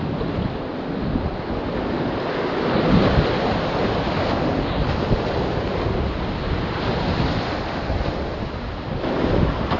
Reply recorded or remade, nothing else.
recorded